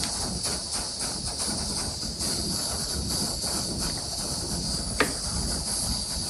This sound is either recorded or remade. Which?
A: recorded